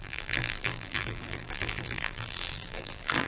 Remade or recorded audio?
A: remade